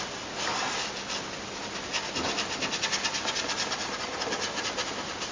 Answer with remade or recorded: recorded